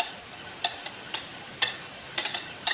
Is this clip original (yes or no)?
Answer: yes